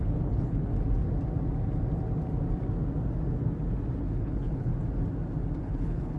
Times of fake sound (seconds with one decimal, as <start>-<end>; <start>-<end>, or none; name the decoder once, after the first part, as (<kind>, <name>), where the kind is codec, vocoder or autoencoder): 0.0-0.7 (codec, HILCodec); 4.0-4.7; 5.6-6.2